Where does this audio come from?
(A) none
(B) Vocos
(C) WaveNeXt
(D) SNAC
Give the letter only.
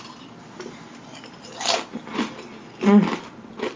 A